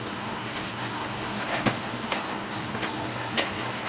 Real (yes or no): no